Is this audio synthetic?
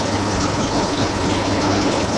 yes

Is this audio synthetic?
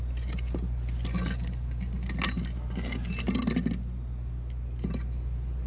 no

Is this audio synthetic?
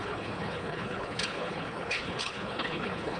yes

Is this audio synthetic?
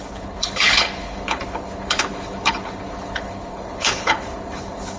yes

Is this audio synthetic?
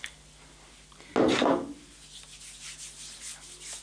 no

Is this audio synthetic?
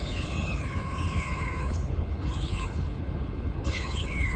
yes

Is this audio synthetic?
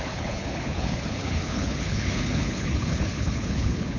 yes